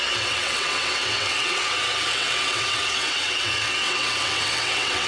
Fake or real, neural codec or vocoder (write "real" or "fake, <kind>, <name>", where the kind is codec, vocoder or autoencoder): fake, vocoder, WaveNeXt